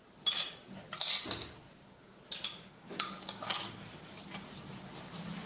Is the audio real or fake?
real